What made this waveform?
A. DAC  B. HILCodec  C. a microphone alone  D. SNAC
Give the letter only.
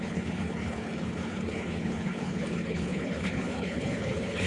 B